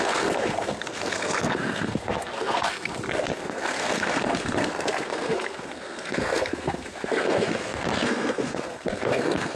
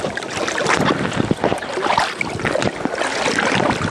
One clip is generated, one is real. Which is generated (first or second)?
first